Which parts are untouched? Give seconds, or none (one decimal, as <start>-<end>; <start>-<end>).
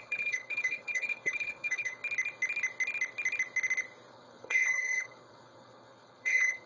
2.0-4.1